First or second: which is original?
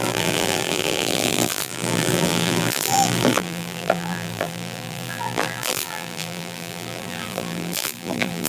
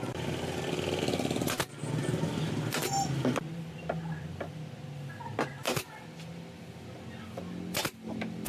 second